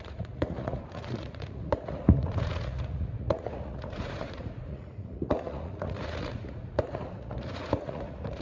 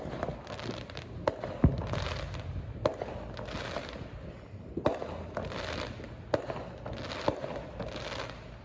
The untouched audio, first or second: second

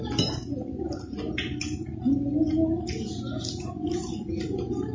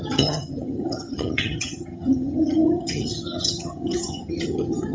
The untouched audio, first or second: first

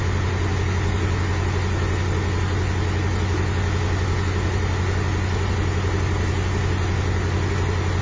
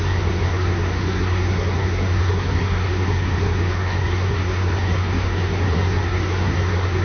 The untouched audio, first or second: first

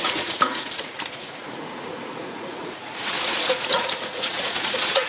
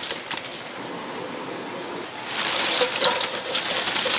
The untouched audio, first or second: second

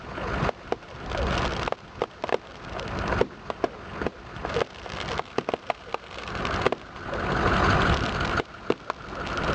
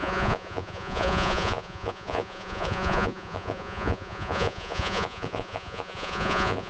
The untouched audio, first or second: first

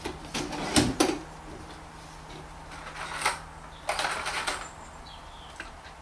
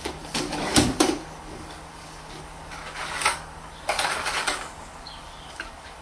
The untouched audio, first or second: first